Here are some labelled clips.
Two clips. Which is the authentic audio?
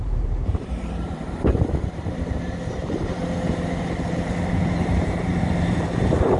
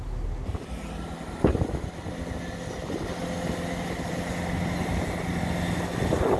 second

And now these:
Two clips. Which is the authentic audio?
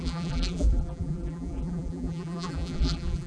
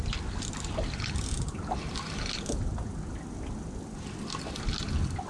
second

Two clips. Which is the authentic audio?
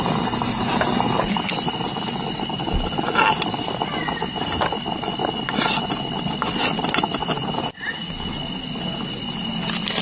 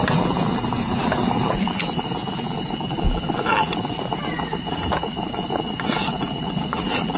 first